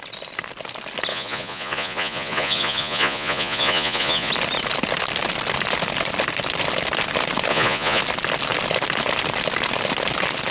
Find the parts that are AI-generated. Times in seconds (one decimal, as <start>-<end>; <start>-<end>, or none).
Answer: 1.1-4.3; 7.5-8.0